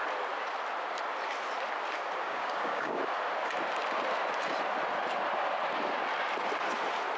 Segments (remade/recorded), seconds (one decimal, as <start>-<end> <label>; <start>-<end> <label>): 0.0-2.2 recorded; 2.2-3.0 remade; 3.0-7.2 recorded